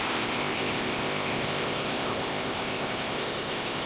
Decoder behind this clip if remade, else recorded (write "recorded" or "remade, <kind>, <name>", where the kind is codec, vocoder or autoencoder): remade, codec, ZipCodec